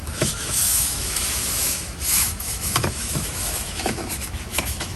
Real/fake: fake